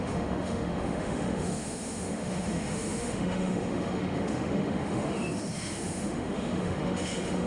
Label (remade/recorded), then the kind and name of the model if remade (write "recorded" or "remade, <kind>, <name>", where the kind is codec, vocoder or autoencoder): remade, autoencoder, DAC-VAE